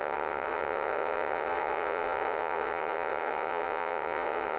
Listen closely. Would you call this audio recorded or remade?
remade